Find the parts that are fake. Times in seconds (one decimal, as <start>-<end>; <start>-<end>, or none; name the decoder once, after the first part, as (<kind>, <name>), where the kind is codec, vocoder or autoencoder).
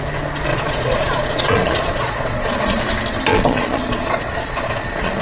0.5-2.8 (vocoder, Vocos); 3.3-5.2